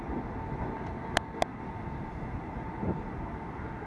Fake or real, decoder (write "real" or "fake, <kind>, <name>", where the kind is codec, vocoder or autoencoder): real